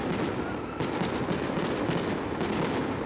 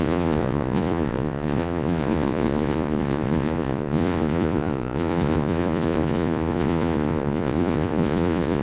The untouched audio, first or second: first